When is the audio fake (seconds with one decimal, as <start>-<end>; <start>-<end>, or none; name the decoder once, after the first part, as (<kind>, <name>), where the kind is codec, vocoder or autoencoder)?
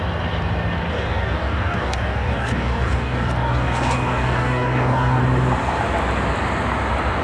0.9-5.2 (codec, DAC)